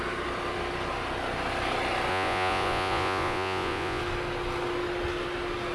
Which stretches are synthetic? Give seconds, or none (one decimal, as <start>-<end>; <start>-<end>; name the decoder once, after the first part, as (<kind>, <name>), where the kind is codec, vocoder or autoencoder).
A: 2.1-4.0 (vocoder, Vocos)